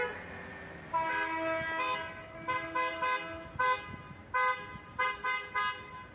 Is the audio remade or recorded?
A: recorded